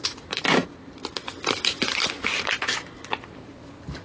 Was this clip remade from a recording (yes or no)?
yes